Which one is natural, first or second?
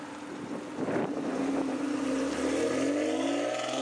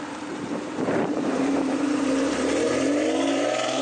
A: first